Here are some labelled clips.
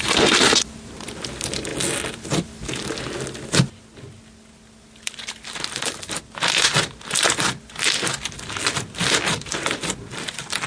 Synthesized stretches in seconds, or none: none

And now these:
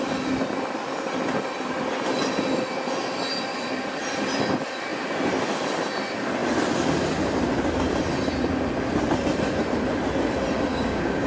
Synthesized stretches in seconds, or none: 10.7-11.3 (codec, DAC)

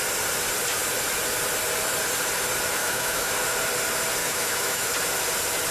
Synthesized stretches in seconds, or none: 2.8-3.3 (autoencoder, DAC-VAE); 4.2-4.9

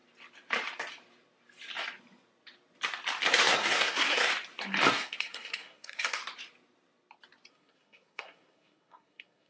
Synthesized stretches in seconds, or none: 3.4-4.3 (codec, SNAC); 4.9-6.2; 7.5-9.5

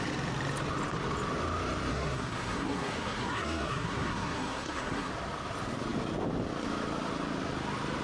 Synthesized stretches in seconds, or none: 1.9-5.1 (codec, SNAC)

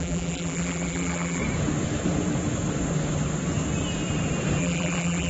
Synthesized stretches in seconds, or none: 0.0-1.4 (vocoder, BigVGAN v2); 4.6-5.3

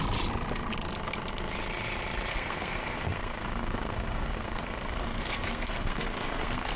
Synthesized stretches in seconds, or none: 2.3-6.8 (codec, SNAC)

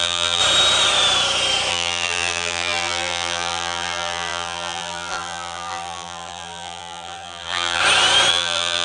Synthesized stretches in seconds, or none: 0.0-0.4 (vocoder, BigVGAN v2); 1.7-7.8; 8.3-8.8